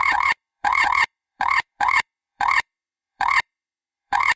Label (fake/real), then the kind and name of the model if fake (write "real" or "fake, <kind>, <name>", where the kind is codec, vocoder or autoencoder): fake, vocoder, WaveNeXt